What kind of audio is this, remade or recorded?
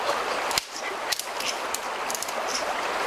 remade